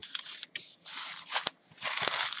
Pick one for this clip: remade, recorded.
recorded